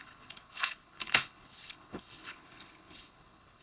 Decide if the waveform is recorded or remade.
remade